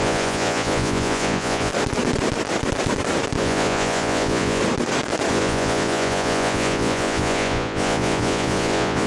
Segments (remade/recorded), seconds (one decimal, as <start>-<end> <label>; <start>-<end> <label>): 0.0-1.7 remade; 1.7-3.4 recorded; 3.4-4.6 remade; 4.6-5.3 recorded; 5.3-9.1 remade